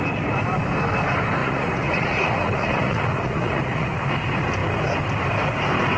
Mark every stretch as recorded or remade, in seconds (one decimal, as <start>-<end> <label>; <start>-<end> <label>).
0.0-1.4 recorded; 1.4-4.0 remade; 4.0-6.0 recorded